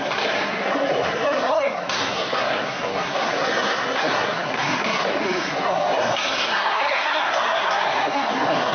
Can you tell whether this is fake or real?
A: fake